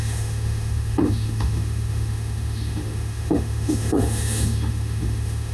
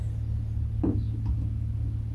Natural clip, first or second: second